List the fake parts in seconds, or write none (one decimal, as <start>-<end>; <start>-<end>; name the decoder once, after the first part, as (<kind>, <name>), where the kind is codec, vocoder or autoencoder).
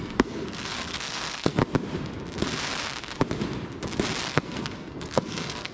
0.0-1.6 (codec, SNAC); 4.3-5.7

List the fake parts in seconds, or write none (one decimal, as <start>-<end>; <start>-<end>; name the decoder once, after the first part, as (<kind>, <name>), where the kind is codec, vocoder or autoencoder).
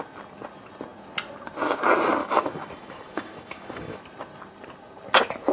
2.2-4.0 (autoencoder, DAC-VAE)